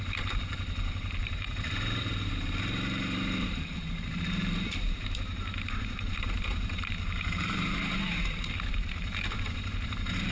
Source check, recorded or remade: remade